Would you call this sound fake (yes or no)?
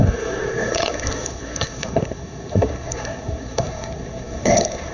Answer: yes